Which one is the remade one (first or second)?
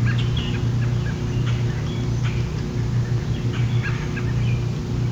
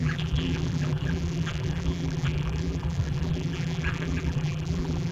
second